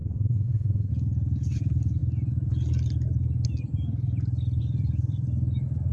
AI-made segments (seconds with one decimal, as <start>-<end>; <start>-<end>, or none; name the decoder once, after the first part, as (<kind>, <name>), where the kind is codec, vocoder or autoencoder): 0.0-0.9 (codec, SNAC)